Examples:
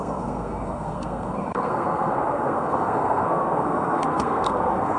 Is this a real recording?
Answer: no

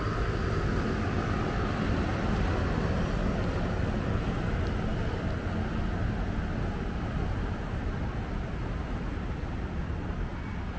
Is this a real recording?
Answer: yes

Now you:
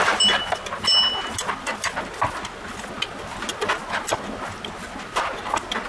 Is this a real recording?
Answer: yes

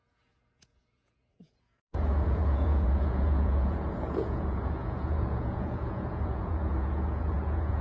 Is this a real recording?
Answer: no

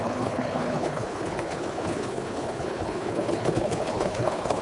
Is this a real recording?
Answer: no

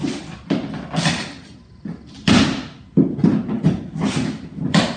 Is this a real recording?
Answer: yes